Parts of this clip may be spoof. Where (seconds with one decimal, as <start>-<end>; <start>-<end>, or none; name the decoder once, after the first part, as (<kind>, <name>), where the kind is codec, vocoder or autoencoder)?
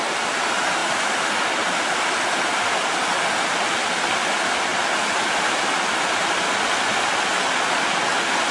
none